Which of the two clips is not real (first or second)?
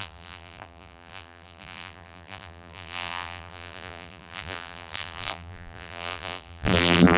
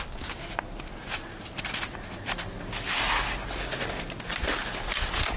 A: first